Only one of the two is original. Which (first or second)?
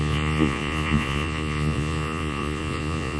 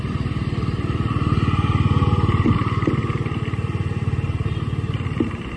second